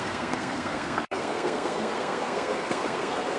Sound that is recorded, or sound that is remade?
remade